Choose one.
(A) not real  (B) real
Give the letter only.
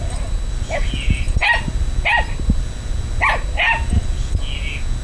B